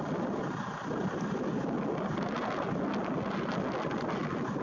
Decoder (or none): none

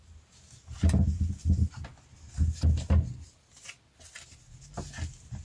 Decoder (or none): none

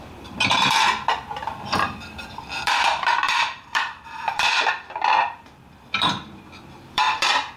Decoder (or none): vocoder, BigVGAN v2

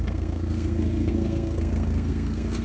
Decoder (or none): codec, SNAC